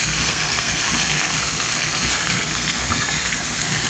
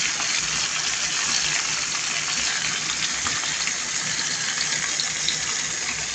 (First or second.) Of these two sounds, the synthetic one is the first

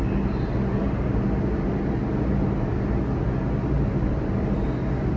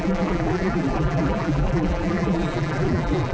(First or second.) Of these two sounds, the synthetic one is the second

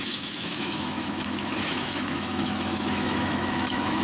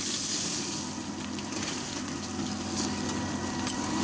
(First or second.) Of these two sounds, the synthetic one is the first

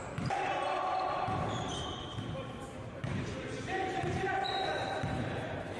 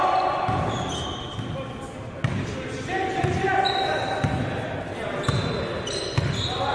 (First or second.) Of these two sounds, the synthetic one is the first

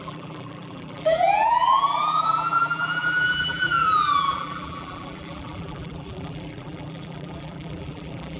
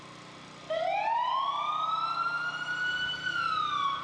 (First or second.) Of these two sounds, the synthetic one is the first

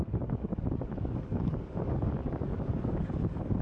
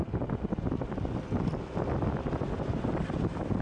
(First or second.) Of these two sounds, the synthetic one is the first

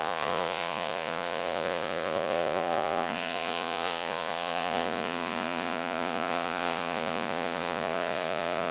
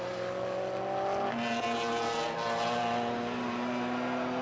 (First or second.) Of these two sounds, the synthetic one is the first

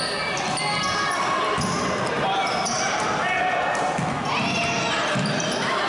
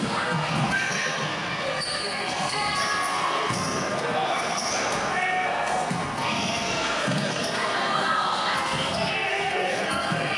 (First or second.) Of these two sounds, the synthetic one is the second